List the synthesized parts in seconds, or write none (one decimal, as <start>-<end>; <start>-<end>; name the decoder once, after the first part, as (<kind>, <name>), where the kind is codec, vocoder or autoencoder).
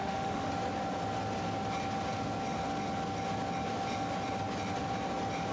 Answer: 0.0-0.5 (autoencoder, DAC-VAE)